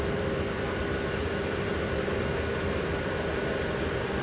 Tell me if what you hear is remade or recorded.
remade